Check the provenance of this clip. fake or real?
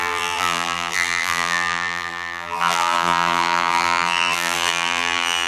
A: fake